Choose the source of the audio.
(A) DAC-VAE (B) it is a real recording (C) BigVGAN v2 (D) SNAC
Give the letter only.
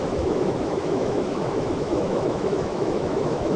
A